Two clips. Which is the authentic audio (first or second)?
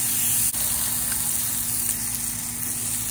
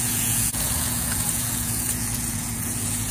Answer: first